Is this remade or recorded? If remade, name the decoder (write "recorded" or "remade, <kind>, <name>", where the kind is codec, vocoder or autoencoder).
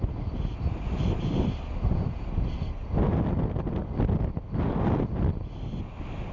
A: recorded